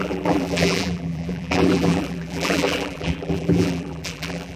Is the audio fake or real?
fake